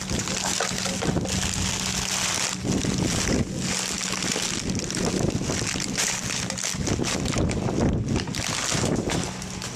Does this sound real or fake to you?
real